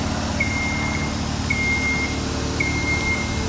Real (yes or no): yes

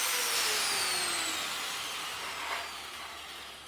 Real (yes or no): yes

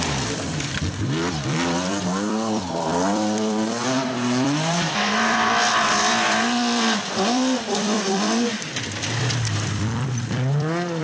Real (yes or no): no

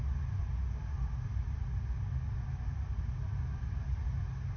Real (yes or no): yes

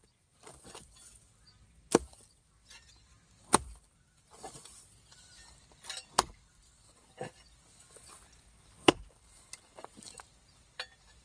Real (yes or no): yes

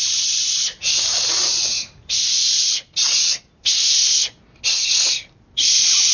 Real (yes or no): yes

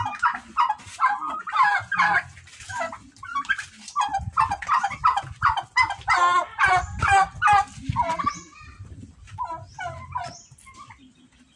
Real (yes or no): yes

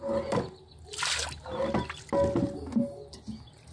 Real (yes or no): yes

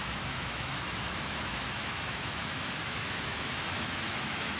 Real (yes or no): no